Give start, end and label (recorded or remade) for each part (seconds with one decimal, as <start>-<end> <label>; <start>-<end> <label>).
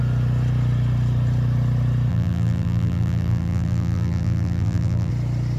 0.0-2.1 recorded; 2.1-5.1 remade; 5.1-5.6 recorded